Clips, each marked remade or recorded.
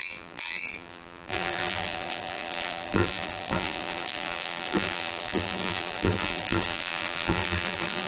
remade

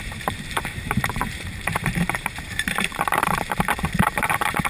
remade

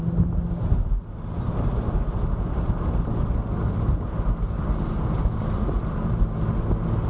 recorded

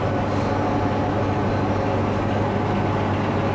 recorded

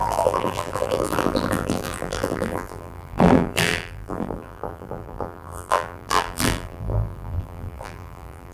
remade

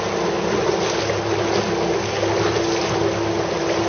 recorded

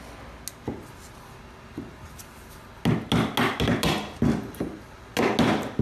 recorded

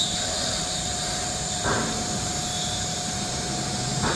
remade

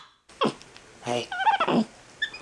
recorded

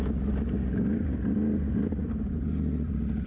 recorded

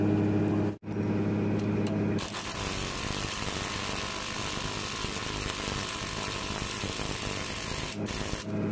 recorded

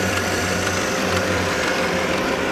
remade